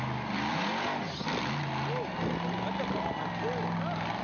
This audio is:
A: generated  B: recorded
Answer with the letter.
B